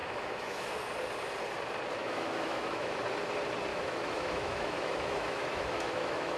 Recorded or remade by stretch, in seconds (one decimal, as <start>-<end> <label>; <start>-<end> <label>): 0.0-0.7 remade; 0.7-2.0 recorded; 2.0-3.0 remade; 3.0-3.7 recorded; 3.7-6.4 remade